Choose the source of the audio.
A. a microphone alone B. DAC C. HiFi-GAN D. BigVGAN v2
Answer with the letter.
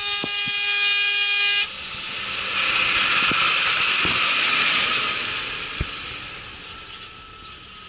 A